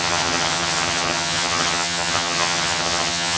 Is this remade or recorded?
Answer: remade